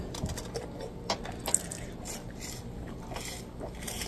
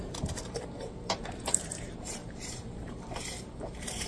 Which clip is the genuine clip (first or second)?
first